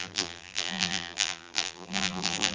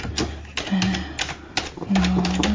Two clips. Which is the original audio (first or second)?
second